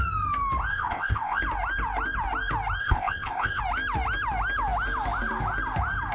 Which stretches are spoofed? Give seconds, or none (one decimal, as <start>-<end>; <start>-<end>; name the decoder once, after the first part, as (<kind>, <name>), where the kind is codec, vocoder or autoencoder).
0.7-1.4 (codec, ZipCodec); 2.8-3.6

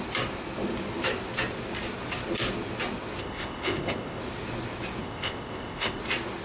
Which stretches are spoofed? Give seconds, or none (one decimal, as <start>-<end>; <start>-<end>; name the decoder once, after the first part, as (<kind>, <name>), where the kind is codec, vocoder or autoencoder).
3.2-4.2 (codec, ZipCodec); 5.0-6.0